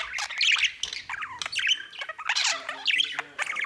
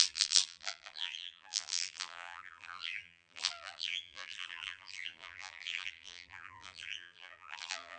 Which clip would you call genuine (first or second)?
first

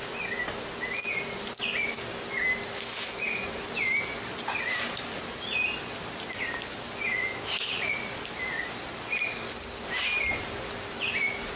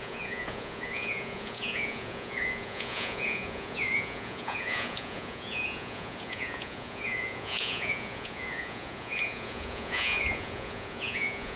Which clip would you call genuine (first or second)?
first